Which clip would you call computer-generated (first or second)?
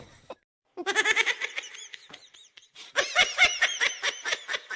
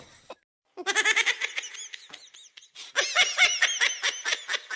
first